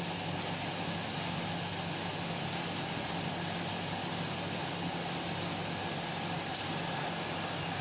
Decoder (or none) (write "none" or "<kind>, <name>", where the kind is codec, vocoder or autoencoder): none